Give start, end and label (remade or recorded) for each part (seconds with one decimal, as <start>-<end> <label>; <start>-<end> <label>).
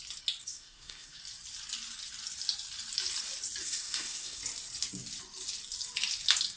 0.0-0.4 recorded; 0.4-1.2 remade; 1.2-3.6 recorded; 3.6-4.4 remade; 4.4-6.6 recorded